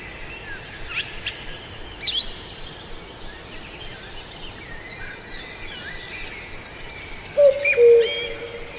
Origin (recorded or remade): recorded